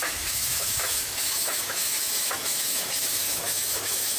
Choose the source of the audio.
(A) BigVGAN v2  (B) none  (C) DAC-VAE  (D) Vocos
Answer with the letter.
C